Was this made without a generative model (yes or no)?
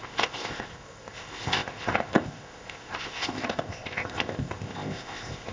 no